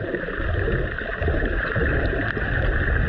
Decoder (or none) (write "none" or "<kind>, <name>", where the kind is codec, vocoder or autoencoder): none